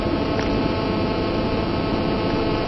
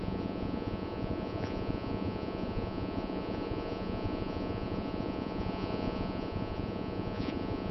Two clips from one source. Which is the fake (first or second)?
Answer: second